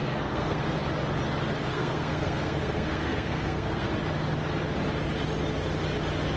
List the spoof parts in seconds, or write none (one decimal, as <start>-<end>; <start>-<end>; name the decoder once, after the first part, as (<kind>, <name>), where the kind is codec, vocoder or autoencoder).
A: 0.0-0.8 (codec, SNAC); 1.7-3.9